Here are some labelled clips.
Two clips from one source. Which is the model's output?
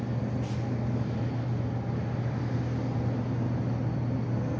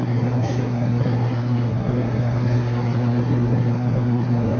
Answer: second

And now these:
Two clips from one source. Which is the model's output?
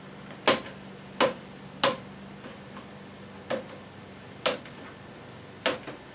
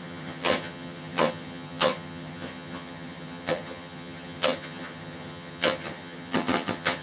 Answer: second